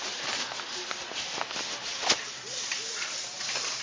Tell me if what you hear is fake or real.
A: real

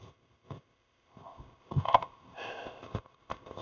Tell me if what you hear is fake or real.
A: fake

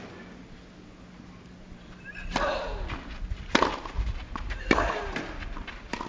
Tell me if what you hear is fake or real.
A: real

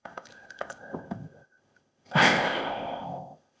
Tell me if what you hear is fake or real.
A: fake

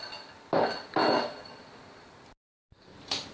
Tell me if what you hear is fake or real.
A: real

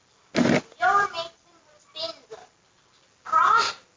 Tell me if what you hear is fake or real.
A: real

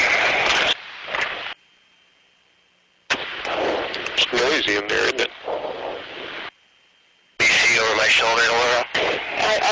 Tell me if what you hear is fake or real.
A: real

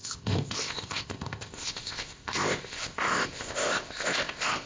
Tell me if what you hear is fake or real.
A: fake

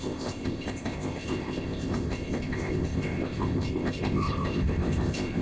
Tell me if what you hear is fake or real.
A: fake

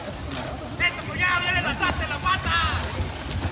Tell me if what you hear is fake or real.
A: real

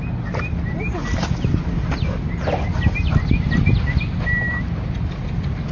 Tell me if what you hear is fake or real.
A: real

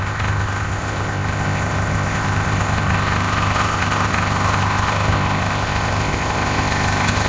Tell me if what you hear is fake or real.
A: fake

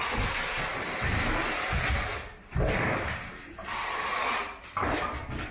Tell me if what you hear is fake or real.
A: real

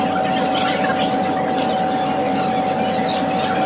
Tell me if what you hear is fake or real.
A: real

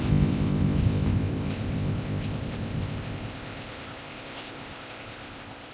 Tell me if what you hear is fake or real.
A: fake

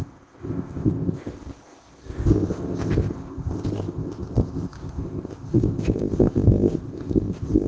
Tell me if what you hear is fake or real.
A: fake